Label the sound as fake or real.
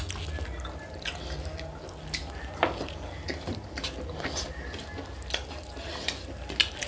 real